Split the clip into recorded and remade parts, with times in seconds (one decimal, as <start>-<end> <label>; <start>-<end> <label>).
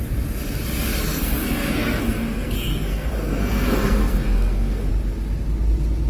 0.0-1.2 recorded; 1.2-4.9 remade; 4.9-6.1 recorded